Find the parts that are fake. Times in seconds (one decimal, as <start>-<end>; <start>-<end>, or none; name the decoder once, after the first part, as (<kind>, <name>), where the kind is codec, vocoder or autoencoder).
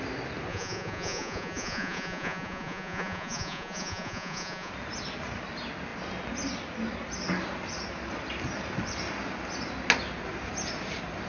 0.5-4.7 (vocoder, Vocos)